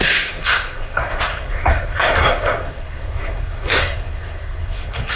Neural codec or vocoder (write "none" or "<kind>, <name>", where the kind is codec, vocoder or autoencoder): codec, SNAC